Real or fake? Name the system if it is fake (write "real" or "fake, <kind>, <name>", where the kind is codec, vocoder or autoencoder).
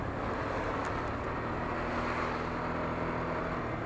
real